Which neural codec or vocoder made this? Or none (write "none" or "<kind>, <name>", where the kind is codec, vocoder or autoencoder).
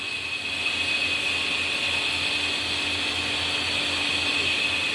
none